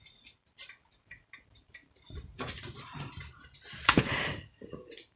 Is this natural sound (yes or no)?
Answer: no